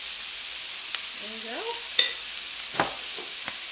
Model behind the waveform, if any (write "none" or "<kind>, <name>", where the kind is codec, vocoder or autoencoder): none